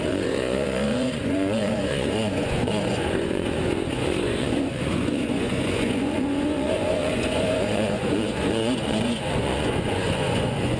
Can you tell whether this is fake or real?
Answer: fake